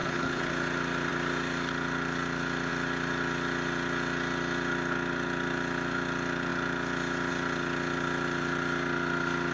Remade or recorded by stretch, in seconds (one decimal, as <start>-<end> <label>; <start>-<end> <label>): 0.0-0.5 remade; 0.5-9.5 recorded